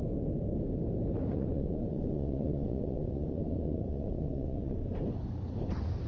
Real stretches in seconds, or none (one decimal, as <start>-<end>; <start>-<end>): 0.0-1.3; 5.0-6.1